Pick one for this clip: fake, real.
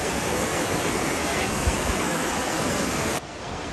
fake